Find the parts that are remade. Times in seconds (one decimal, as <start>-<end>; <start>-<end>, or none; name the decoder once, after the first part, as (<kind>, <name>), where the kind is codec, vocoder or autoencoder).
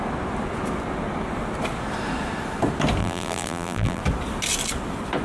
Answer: 3.0-4.0 (vocoder, BigVGAN v2)